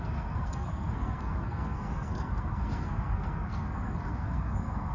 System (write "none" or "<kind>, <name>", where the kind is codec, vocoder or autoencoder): codec, SNAC